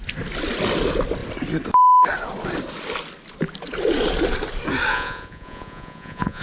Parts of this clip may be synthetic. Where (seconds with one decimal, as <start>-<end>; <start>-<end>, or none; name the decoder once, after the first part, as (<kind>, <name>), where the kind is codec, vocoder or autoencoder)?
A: 4.9-6.4 (vocoder, Vocos)